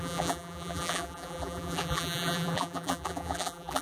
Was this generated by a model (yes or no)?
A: yes